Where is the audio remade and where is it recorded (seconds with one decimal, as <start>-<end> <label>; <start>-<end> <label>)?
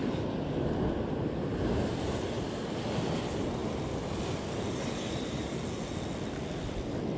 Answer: 0.0-7.2 recorded